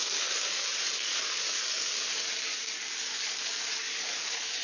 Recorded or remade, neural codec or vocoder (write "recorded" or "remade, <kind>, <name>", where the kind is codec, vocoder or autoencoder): remade, codec, DAC